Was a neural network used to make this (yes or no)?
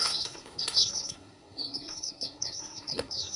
yes